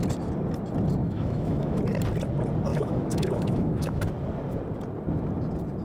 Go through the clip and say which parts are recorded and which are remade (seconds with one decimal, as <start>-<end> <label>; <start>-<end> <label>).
0.0-1.0 recorded; 1.0-1.8 remade; 1.8-2.7 recorded; 2.7-4.0 remade; 4.0-5.8 recorded